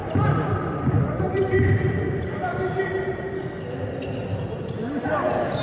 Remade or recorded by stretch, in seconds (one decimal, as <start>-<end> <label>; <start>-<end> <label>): 0.0-3.4 remade; 3.4-5.6 recorded